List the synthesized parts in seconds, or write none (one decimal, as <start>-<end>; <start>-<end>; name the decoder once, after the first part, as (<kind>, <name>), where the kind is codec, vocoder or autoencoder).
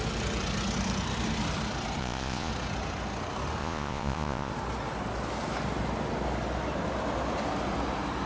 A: 2.0-2.5 (vocoder, Vocos); 3.6-4.5